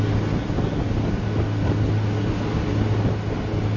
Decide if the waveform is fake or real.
real